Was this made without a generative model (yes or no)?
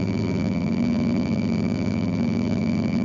no